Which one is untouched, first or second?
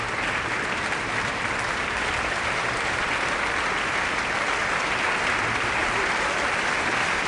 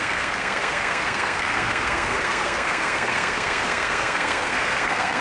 first